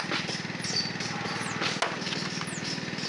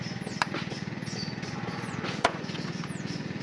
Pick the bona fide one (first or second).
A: first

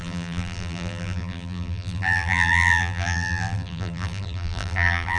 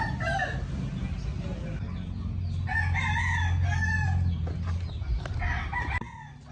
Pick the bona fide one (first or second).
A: second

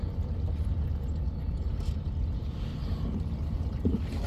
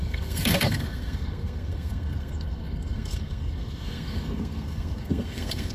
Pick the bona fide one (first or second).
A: first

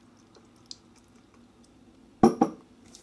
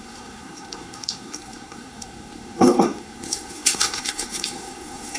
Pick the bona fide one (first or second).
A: first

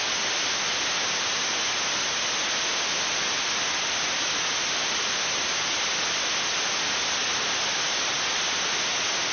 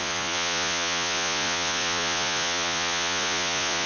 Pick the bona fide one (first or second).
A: first